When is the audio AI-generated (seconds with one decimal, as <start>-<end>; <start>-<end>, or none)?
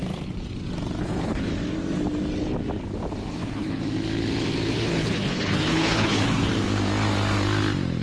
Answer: 1.0-1.5; 3.3-3.8; 4.7-6.5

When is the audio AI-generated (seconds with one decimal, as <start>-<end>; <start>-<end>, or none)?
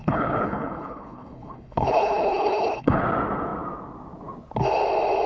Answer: 0.0-3.0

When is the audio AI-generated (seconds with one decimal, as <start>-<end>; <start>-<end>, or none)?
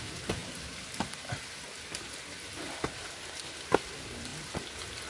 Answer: none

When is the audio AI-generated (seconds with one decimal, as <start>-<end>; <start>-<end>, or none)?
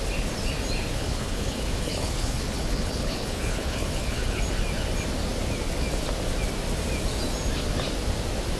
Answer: 0.9-4.4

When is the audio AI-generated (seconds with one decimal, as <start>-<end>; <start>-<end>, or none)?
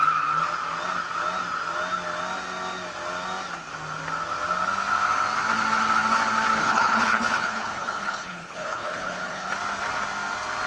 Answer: 6.6-9.5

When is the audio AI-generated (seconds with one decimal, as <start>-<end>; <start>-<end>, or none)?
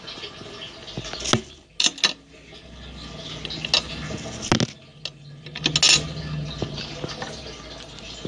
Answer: none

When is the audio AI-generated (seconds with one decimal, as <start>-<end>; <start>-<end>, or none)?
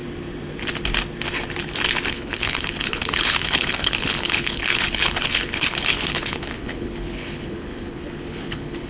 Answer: 2.1-8.9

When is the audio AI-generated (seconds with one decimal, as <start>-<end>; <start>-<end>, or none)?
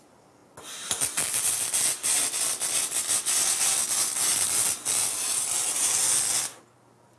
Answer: none